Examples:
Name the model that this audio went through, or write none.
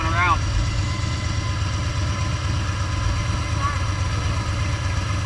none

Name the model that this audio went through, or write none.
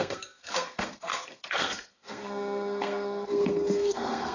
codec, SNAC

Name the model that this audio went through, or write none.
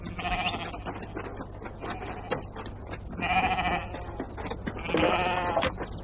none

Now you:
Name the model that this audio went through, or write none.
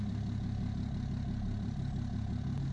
none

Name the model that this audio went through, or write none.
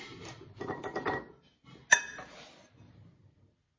none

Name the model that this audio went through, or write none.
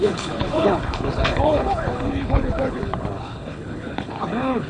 codec, HILCodec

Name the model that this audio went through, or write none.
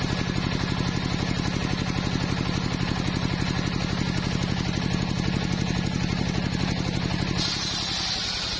none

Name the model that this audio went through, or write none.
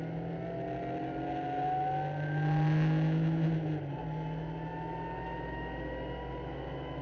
none